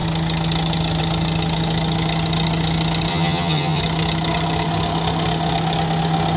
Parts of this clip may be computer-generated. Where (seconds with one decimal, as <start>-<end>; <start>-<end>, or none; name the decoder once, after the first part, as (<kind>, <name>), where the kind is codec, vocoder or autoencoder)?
3.1-3.8 (vocoder, HiFi-GAN)